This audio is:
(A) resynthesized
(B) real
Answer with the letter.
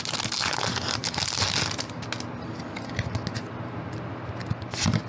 B